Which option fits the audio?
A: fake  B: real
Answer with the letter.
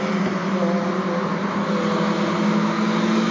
B